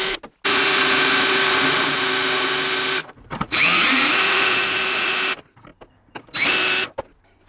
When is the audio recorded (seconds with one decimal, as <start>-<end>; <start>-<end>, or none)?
0.0-3.0; 5.2-7.5